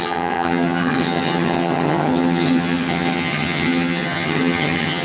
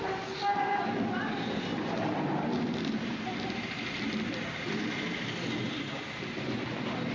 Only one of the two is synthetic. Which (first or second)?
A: first